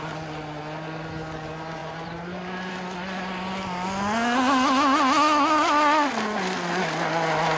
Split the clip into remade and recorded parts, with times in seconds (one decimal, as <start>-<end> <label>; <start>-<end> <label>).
0.0-1.8 recorded; 1.8-2.7 remade; 2.7-7.6 recorded

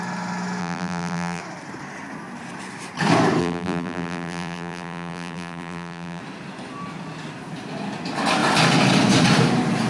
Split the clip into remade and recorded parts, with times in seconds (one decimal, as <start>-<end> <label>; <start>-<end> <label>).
0.0-0.6 recorded; 0.6-1.4 remade; 1.4-3.4 recorded; 3.4-6.2 remade; 6.2-9.9 recorded

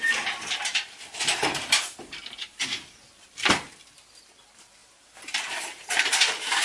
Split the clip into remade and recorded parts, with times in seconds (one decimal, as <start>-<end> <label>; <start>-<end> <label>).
0.0-4.8 recorded; 4.8-6.6 remade

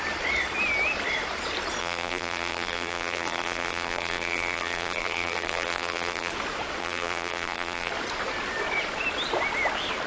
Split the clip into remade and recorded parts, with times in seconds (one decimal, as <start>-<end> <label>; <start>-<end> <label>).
0.0-1.8 recorded; 1.8-6.3 remade; 6.3-6.8 recorded; 6.8-7.9 remade; 7.9-10.1 recorded